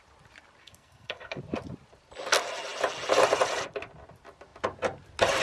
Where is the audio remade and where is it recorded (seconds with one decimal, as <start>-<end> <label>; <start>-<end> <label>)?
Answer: 0.0-0.6 recorded; 0.6-1.4 remade; 1.4-5.4 recorded